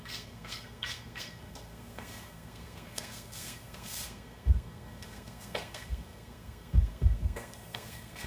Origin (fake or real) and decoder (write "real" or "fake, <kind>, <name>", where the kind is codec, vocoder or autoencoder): fake, codec, SNAC